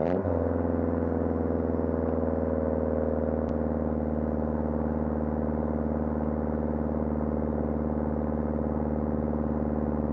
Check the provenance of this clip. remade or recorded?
recorded